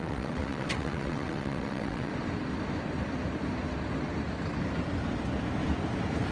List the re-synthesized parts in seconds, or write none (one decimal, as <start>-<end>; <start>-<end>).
0.0-2.1